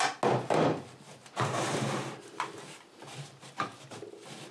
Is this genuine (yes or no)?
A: yes